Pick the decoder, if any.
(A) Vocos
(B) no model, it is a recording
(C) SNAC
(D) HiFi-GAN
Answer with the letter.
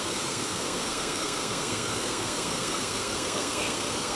C